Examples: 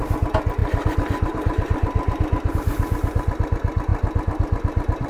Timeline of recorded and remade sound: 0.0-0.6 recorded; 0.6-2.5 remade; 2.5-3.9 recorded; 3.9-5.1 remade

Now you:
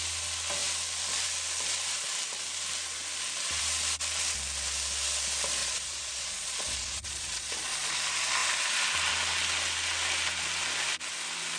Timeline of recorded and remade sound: 0.0-5.6 recorded; 5.6-7.9 remade; 7.9-11.6 recorded

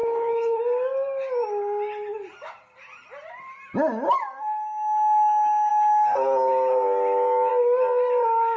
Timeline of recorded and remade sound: 0.0-0.6 remade; 0.6-8.6 recorded

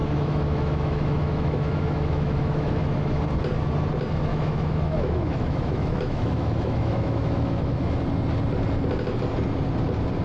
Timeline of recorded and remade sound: 0.0-3.2 remade; 3.2-4.3 recorded; 4.3-8.0 remade; 8.0-10.2 recorded

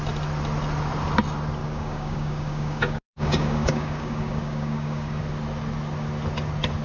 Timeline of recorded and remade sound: 0.0-1.6 recorded; 1.6-5.2 remade; 5.2-6.8 recorded

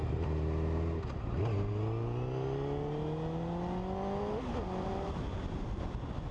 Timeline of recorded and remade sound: 0.0-6.3 recorded